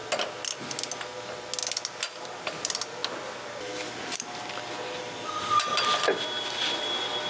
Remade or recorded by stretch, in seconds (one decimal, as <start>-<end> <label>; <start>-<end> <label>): 0.0-7.3 recorded